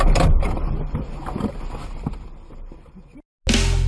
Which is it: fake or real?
real